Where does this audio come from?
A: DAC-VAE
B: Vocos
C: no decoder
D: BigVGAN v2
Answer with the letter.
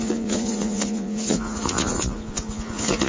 B